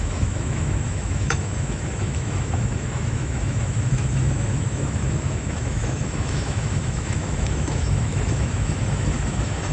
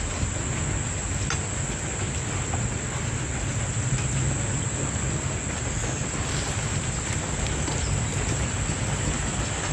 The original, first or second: second